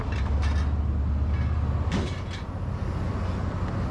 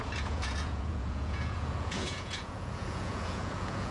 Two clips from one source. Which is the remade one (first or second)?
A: second